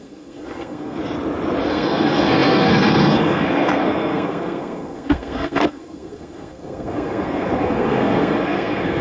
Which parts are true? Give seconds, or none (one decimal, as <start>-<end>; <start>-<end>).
1.0-1.7